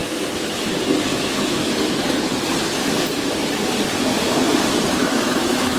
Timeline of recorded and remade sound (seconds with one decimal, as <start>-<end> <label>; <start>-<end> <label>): 0.0-0.7 remade; 0.7-1.1 recorded; 1.1-1.8 remade; 1.8-5.0 recorded; 5.0-5.8 remade